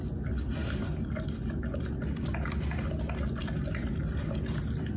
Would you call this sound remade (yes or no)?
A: no